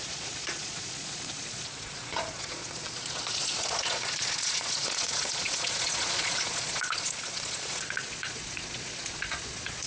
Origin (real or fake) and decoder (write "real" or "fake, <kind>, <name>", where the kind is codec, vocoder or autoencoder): fake, vocoder, Vocos